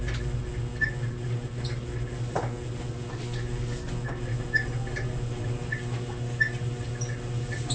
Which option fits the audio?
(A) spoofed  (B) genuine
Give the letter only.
B